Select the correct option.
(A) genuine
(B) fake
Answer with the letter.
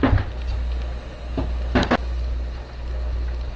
A